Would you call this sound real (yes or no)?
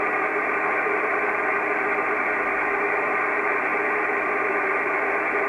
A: no